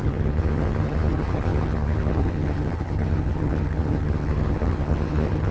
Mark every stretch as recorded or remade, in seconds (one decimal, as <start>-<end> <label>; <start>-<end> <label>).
0.0-5.5 remade